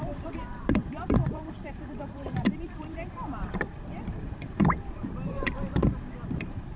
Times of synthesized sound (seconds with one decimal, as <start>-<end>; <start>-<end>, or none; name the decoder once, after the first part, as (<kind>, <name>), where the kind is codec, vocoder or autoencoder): 0.0-5.8 (vocoder, BigVGAN v2); 6.3-6.8